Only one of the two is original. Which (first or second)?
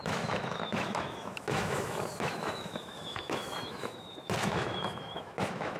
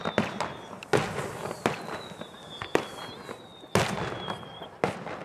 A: second